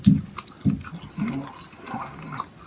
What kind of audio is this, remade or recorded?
recorded